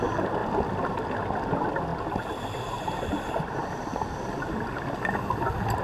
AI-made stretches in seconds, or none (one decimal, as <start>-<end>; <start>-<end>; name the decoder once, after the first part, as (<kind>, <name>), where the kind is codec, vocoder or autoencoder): none